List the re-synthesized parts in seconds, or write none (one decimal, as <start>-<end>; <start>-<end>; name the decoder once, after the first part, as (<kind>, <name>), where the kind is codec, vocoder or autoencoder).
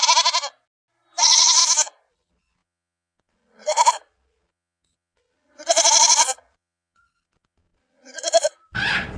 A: 1.2-1.6 (vocoder, Vocos); 2.1-9.2